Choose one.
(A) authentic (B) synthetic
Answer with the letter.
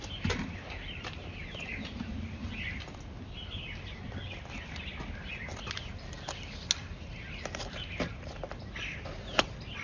A